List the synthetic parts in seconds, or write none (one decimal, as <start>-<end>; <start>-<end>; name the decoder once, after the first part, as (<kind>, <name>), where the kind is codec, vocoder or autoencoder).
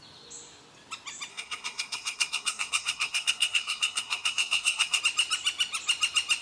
1.3-5.0 (codec, SNAC)